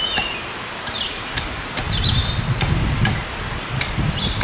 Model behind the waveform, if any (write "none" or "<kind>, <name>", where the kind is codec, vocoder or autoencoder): none